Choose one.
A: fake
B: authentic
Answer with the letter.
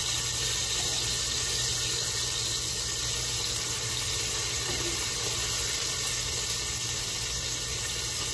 B